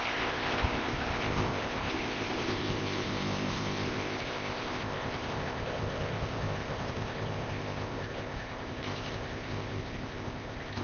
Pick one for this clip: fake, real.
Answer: fake